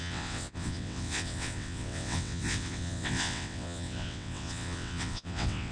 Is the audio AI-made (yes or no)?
yes